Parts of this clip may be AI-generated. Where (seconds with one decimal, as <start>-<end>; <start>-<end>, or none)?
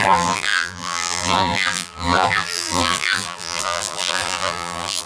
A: 0.0-5.1